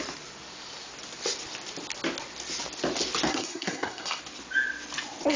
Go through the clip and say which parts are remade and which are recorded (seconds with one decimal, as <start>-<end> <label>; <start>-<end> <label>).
0.0-3.3 recorded; 3.3-4.2 remade; 4.2-5.4 recorded